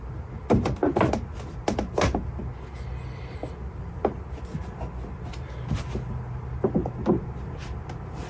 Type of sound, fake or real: real